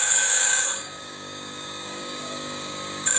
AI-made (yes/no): yes